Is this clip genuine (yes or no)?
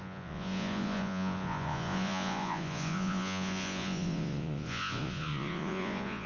no